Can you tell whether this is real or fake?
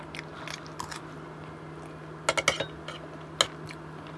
real